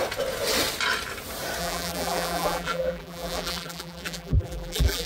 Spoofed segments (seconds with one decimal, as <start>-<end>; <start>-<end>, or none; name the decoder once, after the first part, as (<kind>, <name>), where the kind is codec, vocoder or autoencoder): 1.6-5.1 (vocoder, BigVGAN v2)